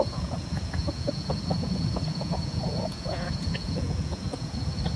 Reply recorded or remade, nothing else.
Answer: remade